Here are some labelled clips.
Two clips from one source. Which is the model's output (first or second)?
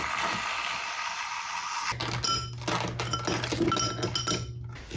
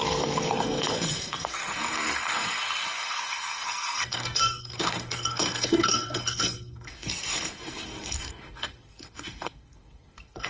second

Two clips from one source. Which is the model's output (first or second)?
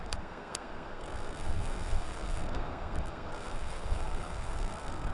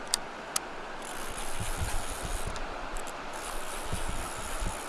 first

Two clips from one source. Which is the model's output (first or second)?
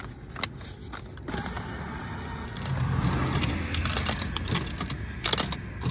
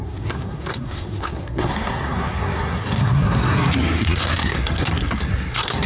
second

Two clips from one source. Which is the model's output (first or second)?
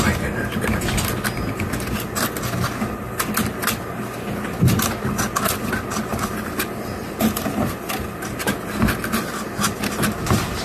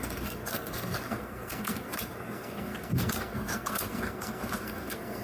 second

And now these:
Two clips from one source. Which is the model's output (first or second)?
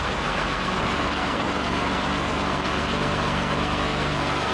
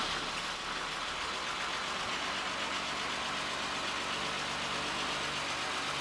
first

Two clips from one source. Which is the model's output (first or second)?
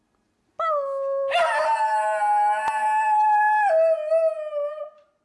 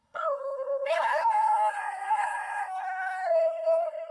second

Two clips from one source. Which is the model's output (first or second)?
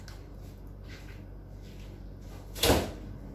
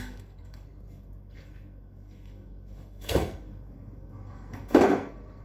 second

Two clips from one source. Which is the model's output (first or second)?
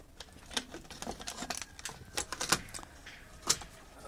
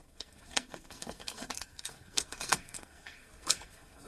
second